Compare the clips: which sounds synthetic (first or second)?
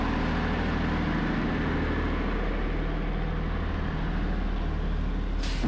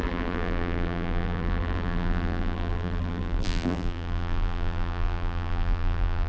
second